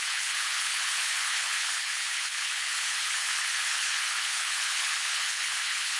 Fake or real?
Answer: fake